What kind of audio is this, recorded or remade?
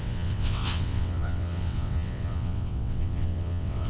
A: remade